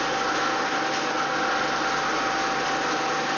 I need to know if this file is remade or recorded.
recorded